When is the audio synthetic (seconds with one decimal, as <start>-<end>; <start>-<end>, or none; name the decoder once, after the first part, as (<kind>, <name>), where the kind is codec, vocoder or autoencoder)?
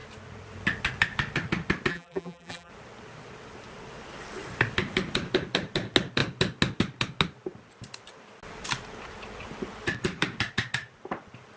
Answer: 1.9-2.7 (vocoder, BigVGAN v2)